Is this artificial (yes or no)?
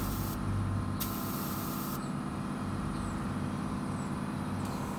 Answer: no